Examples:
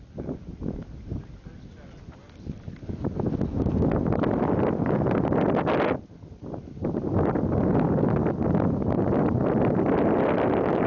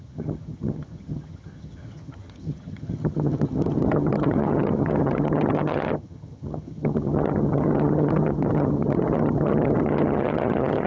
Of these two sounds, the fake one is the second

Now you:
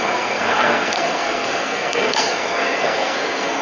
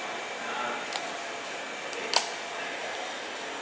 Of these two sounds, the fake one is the first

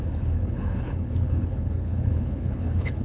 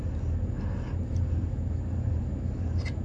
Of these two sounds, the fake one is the first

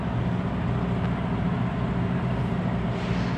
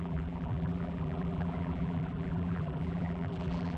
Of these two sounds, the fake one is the second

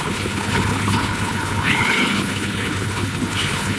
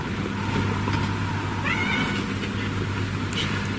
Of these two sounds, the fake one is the first